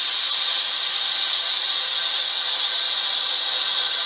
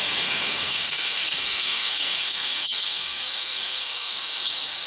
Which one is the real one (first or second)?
first